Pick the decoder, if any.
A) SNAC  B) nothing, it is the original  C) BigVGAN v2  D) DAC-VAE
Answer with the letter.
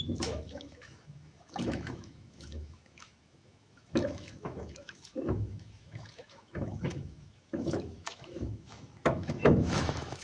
D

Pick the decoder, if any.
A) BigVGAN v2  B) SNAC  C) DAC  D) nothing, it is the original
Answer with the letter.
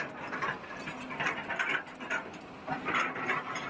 D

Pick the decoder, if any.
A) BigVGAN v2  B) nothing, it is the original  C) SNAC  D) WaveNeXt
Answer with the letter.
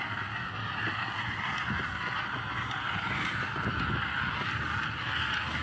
B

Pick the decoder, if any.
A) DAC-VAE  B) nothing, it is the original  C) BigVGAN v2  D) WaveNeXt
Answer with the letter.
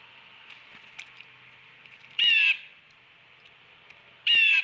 C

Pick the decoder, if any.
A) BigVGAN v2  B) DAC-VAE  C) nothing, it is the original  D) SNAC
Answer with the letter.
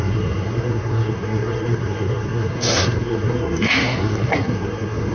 D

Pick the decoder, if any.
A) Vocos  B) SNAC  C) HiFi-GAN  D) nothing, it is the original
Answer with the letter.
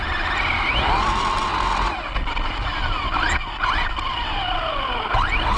D